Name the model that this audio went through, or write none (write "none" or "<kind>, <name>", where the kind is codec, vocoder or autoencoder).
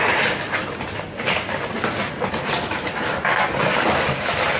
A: none